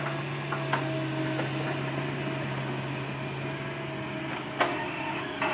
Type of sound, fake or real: real